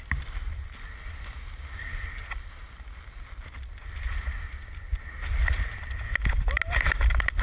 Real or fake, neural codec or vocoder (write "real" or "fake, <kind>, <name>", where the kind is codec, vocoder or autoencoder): real